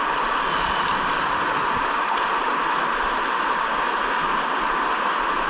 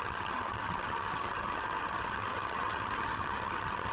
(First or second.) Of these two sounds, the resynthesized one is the second